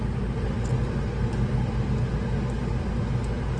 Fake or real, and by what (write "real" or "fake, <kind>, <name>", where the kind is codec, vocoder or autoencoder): real